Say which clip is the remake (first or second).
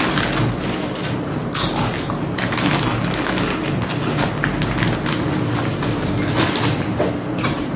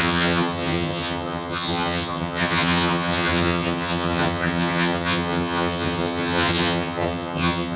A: second